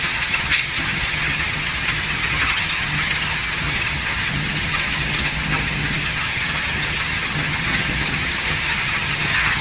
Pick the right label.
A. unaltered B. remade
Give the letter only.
B